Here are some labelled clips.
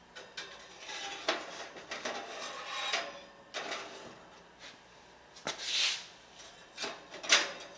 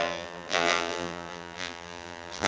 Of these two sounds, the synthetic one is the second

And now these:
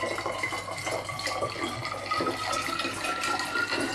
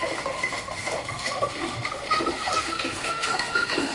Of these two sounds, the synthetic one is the second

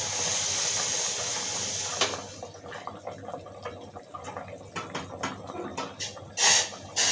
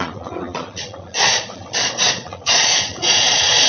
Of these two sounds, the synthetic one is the second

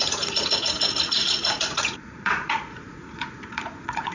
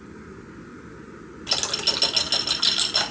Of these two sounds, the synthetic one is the first